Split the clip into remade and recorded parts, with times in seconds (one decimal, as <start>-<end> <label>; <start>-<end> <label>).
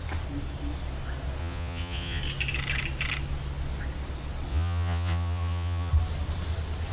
0.0-1.4 recorded; 1.4-2.2 remade; 2.2-4.5 recorded; 4.5-5.9 remade; 5.9-6.9 recorded